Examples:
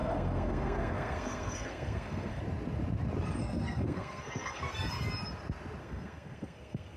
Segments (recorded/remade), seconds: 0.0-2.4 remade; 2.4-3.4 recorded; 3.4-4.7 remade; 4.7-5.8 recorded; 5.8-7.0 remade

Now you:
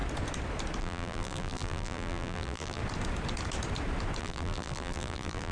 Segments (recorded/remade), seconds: 0.0-0.8 recorded; 0.8-2.8 remade; 2.8-4.2 recorded; 4.2-5.5 remade